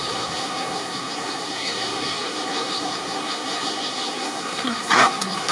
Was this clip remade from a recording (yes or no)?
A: yes